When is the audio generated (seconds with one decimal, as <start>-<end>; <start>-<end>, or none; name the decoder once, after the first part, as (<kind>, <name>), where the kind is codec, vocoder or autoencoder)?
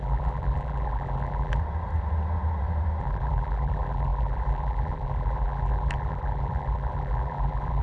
0.0-1.6 (vocoder, BigVGAN v2); 3.0-7.8